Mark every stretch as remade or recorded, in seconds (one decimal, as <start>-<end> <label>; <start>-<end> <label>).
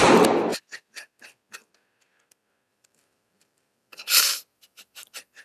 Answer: 0.0-2.7 recorded; 2.7-4.2 remade; 4.2-5.4 recorded